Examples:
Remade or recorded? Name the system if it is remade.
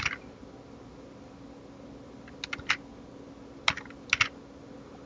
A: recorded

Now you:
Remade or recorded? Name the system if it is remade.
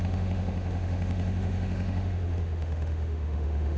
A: remade, autoencoder, DAC-VAE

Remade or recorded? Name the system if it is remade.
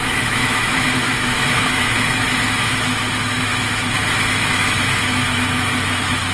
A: remade, autoencoder, DAC-VAE